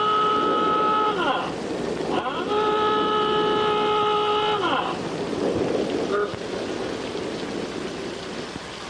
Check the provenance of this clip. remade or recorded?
recorded